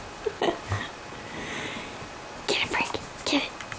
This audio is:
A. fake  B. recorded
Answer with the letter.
B